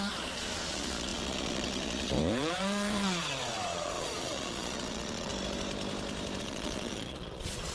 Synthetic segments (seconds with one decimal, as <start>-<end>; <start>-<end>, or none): 0.0-5.3; 6.4-7.7

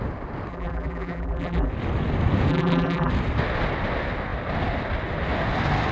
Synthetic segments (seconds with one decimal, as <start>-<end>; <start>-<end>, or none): 0.5-1.7; 2.5-3.1

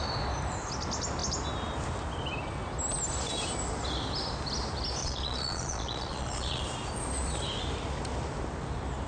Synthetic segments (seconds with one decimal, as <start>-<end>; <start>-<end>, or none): 5.0-6.6

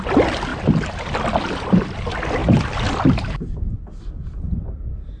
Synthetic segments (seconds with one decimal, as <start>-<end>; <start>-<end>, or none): 0.5-2.0; 2.4-3.4

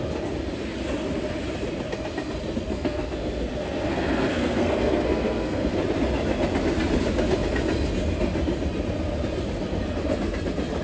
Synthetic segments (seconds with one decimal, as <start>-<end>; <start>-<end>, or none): 2.7-5.8

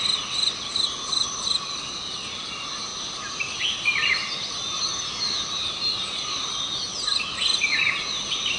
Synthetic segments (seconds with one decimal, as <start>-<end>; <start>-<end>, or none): none

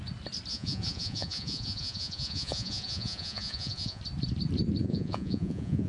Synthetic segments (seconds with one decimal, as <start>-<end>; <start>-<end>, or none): 0.5-4.0; 4.8-5.9

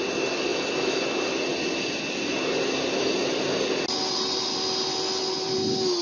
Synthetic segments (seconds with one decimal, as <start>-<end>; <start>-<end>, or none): none